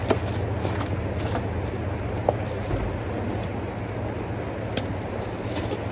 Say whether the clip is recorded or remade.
recorded